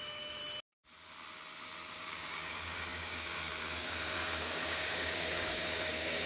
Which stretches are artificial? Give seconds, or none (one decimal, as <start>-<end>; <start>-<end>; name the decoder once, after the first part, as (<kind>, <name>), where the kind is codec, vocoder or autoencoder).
0.0-0.4 (codec, DAC); 1.9-6.3